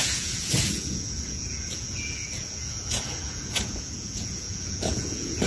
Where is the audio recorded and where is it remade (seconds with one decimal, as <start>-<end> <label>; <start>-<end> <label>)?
0.0-5.5 remade